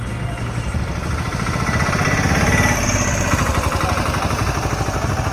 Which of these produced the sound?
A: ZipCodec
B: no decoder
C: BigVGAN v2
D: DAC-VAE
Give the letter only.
B